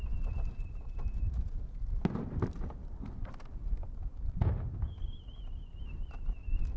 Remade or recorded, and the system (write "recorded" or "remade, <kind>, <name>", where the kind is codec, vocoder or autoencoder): recorded